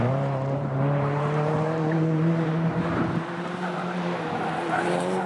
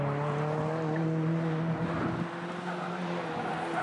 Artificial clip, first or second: first